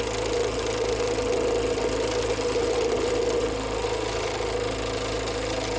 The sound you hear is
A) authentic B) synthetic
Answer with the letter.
A